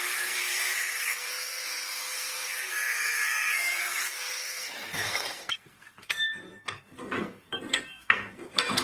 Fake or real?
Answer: fake